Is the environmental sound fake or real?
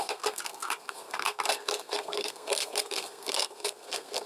fake